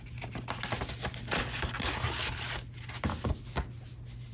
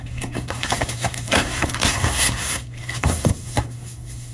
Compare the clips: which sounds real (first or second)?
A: first